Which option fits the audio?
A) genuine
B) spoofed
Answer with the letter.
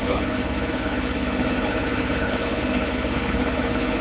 B